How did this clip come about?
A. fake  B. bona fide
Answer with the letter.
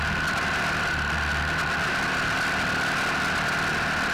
B